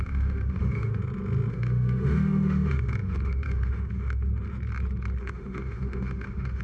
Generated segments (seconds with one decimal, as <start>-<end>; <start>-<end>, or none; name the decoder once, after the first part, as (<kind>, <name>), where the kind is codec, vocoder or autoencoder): 0.0-1.0 (autoencoder, DAC-VAE); 1.5-4.3; 5.2-6.6